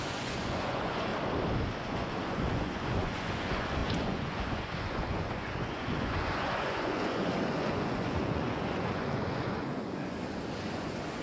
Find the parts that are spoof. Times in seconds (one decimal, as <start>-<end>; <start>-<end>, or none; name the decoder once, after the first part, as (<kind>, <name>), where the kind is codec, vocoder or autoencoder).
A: 0.0-1.1 (vocoder, Vocos); 1.8-11.2